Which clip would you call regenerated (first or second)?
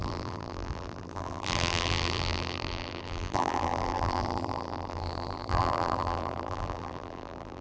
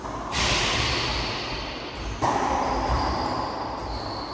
first